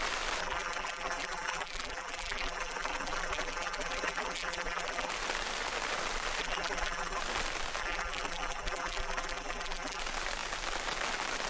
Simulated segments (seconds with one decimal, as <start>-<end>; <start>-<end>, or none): 0.4-5.1; 6.4-7.2; 7.8-10.0